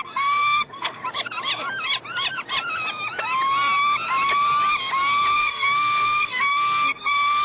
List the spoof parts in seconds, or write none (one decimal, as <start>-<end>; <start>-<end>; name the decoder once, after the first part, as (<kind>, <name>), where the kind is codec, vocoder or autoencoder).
0.0-1.0 (codec, SNAC); 5.4-7.4